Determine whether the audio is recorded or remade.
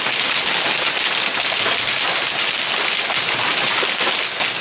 recorded